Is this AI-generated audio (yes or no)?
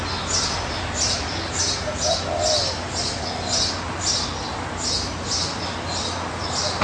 no